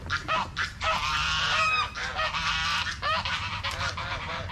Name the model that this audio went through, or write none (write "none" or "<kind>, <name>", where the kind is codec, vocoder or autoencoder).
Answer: vocoder, BigVGAN v2